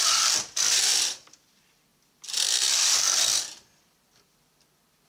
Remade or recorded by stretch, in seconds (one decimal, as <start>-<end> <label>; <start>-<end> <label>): 0.0-5.1 remade